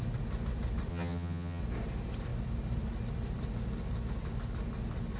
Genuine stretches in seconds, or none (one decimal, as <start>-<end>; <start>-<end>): 0.0-0.9; 1.6-5.2